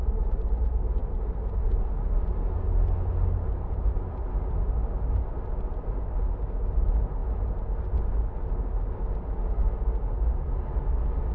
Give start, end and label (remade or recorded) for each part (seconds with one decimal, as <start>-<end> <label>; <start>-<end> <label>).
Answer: 0.0-11.3 recorded